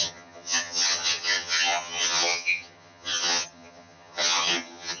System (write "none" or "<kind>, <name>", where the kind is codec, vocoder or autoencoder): vocoder, HiFi-GAN